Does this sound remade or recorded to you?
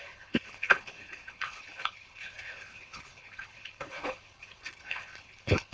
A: remade